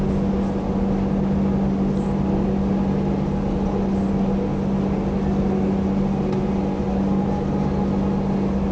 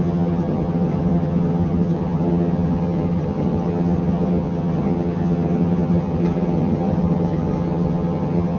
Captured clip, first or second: first